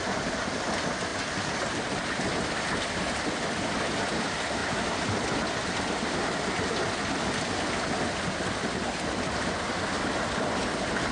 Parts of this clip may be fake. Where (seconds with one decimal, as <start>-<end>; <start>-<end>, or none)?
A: none